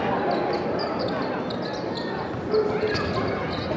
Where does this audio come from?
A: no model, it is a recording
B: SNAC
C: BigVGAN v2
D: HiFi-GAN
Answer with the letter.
A